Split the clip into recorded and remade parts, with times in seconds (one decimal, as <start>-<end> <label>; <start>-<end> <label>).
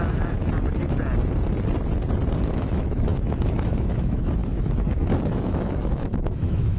0.0-0.4 remade; 0.4-2.4 recorded; 2.4-6.8 remade